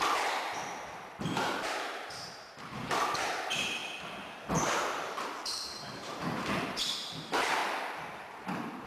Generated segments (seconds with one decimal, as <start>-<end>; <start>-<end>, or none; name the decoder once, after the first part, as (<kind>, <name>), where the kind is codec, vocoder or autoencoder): 0.0-3.8 (vocoder, BigVGAN v2); 4.6-7.6; 8.4-8.9